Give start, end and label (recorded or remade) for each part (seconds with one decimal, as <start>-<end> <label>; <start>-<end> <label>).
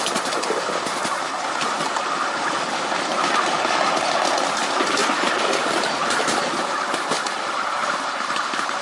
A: 0.0-8.8 recorded